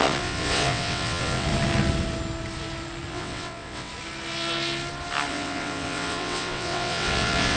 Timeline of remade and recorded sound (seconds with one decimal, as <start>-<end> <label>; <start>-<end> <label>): 0.0-1.5 remade; 1.5-3.1 recorded; 3.1-3.9 remade; 3.9-5.3 recorded; 5.3-7.6 remade